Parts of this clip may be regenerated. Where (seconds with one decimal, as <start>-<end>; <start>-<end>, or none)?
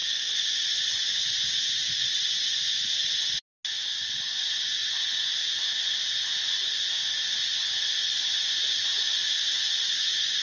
0.0-3.0; 3.8-10.4